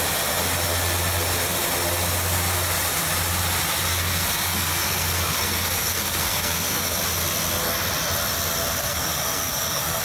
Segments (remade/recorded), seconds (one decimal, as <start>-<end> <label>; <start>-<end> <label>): 0.0-3.9 recorded; 3.9-7.0 remade; 7.0-8.8 recorded; 8.8-10.0 remade